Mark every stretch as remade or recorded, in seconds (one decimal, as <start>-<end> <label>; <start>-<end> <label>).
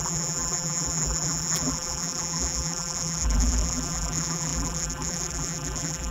0.0-6.1 remade